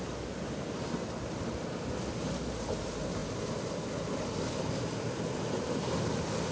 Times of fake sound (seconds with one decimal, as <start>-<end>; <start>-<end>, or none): none